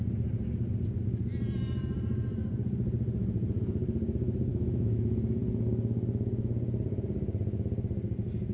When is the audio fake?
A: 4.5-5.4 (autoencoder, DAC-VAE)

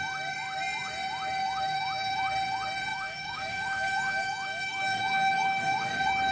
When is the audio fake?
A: 2.9-5.8 (autoencoder, DAC-VAE)

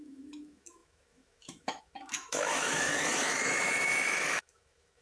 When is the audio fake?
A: 0.0-5.0 (autoencoder, DAC-VAE)

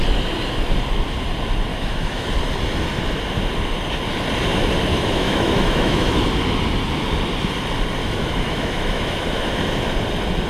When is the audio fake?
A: 1.7-2.3 (autoencoder, DAC-VAE); 4.9-6.2; 8.0-9.5

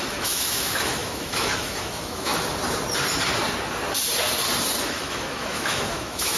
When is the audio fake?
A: 0.0-2.3 (autoencoder, DAC-VAE); 4.9-6.4